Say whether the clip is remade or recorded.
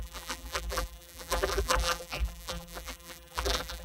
remade